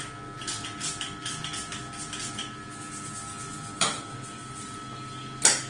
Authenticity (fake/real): real